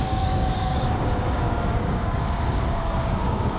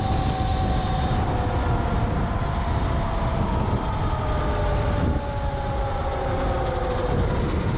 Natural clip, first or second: second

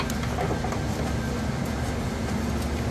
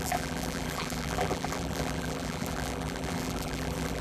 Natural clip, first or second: first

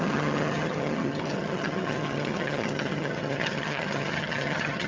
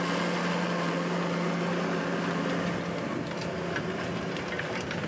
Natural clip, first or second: second